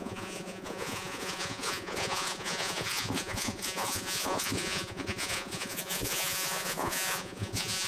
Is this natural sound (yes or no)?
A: no